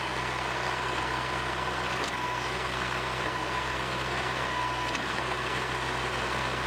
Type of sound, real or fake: fake